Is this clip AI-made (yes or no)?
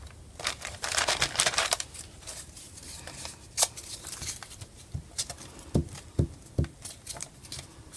yes